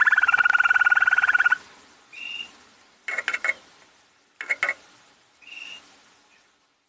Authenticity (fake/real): real